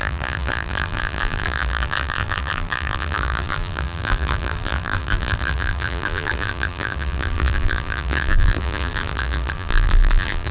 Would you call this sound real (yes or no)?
no